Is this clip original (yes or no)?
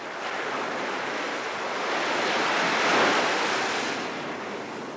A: yes